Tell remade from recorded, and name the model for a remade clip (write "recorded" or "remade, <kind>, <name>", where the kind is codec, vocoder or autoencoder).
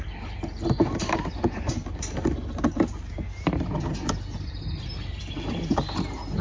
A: recorded